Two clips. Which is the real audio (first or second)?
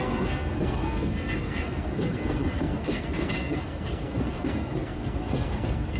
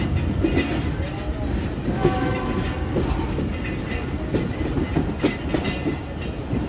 second